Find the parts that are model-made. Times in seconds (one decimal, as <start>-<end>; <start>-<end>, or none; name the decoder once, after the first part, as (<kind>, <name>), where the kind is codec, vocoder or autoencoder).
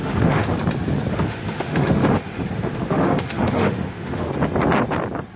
0.0-0.6 (autoencoder, DAC-VAE); 1.1-4.3